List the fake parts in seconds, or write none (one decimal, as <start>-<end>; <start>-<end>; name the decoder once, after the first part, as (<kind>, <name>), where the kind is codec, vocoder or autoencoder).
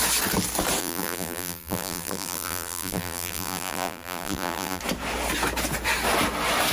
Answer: 0.8-4.8 (vocoder, BigVGAN v2)